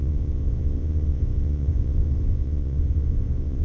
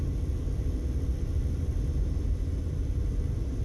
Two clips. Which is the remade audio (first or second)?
first